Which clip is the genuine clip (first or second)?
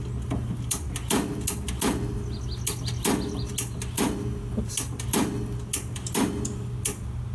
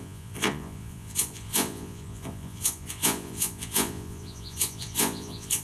first